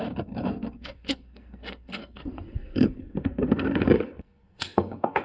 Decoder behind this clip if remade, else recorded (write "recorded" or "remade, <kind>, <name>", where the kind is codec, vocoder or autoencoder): remade, codec, SNAC